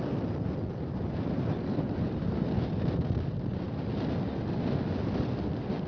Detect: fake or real real